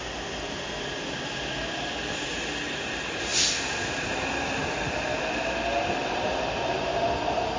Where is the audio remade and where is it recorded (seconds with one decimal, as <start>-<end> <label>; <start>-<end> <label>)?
0.0-7.6 recorded